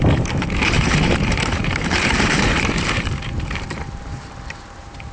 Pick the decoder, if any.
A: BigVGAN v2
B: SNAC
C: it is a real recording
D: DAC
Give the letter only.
A